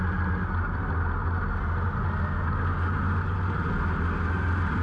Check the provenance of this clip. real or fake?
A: real